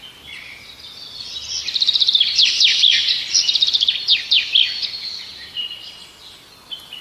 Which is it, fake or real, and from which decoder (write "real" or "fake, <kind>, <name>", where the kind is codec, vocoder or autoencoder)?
real